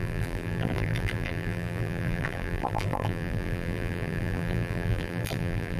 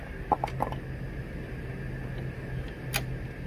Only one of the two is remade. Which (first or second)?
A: first